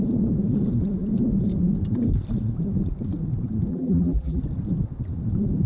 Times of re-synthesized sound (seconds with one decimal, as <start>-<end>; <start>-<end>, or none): 3.7-4.4